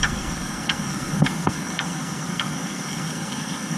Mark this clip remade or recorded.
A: remade